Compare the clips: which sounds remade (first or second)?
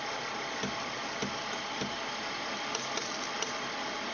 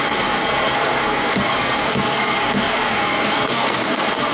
second